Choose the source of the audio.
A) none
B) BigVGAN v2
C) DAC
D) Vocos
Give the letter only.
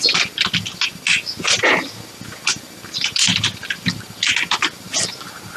A